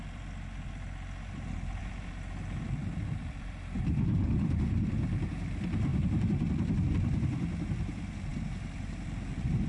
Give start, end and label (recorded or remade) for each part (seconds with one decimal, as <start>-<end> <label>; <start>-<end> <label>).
0.0-1.8 remade; 1.8-2.6 recorded; 2.6-5.9 remade; 5.9-6.9 recorded; 6.9-9.7 remade